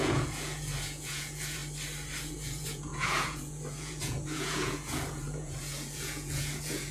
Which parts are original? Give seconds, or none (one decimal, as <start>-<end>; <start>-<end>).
1.6-2.2